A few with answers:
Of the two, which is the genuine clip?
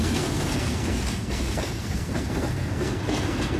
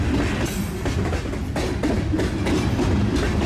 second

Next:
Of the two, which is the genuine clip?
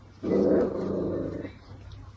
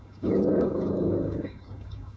first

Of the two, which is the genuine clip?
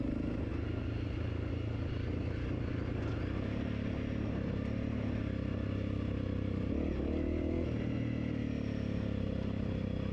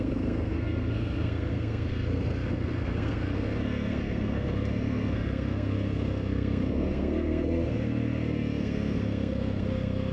first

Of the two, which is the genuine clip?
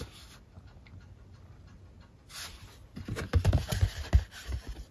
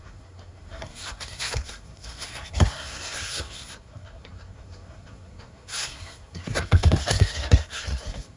first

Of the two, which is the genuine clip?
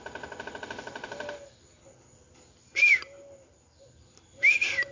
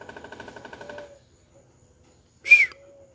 second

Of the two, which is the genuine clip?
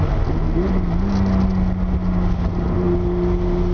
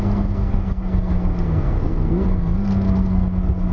first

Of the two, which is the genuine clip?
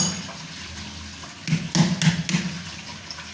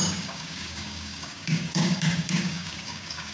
first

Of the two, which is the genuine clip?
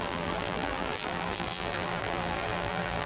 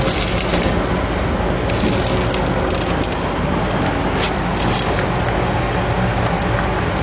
second